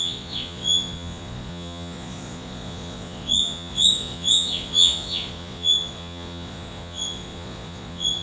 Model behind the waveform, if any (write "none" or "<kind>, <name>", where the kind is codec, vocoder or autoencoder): vocoder, Vocos